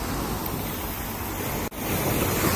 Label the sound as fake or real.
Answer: real